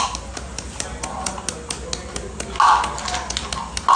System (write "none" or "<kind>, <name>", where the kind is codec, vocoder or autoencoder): none